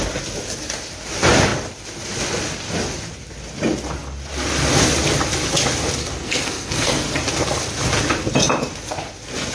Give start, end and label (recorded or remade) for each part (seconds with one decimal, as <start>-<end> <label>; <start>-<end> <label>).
0.0-6.0 recorded; 6.0-7.2 remade; 7.2-9.5 recorded